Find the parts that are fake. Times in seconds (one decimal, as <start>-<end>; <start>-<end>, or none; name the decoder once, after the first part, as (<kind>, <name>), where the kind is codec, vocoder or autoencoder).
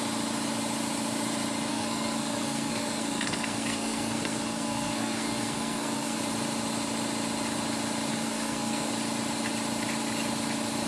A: 1.7-6.2 (codec, SNAC); 8.1-8.9